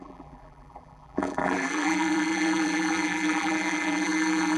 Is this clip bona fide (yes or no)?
no